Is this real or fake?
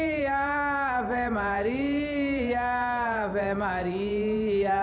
fake